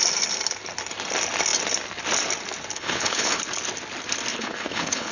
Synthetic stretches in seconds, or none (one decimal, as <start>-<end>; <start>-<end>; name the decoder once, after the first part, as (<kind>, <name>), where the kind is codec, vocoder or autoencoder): 2.7-3.4 (codec, HILCodec); 4.3-5.1